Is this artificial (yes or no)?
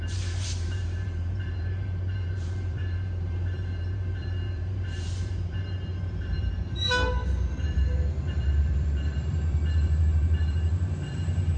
yes